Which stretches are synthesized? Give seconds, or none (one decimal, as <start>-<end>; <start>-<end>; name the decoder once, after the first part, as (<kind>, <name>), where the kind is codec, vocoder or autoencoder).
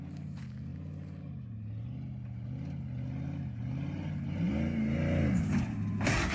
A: none